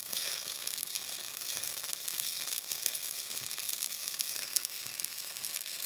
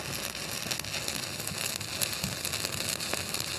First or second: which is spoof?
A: first